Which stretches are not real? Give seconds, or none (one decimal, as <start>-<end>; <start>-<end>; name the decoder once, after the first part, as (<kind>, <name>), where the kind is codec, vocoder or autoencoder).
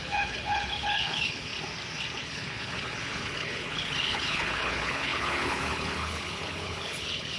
0.0-1.5 (codec, HILCodec); 2.2-7.4